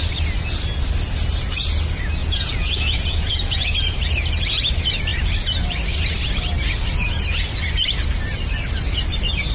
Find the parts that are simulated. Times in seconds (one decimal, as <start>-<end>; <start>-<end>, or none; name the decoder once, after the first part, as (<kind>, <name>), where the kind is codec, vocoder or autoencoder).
2.2-3.6 (vocoder, Vocos)